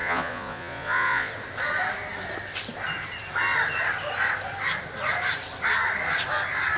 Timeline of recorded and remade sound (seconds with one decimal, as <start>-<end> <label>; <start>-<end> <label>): 0.0-1.3 remade; 1.3-6.8 recorded